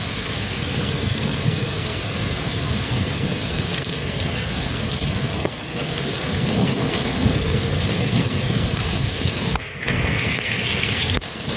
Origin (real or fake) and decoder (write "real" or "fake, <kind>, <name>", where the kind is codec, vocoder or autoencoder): fake, codec, SNAC